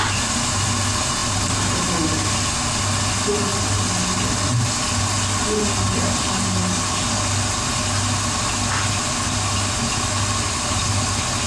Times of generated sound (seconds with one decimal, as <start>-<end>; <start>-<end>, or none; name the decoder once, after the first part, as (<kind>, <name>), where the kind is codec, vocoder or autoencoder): 1.2-1.9 (vocoder, BigVGAN v2)